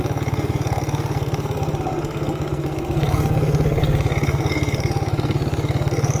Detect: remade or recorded remade